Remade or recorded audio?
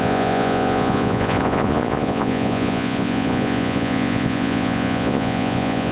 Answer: remade